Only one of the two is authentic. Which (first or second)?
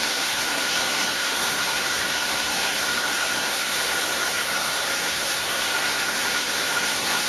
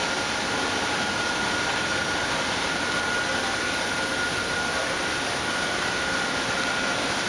second